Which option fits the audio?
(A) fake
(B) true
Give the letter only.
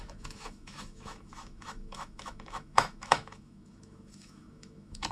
A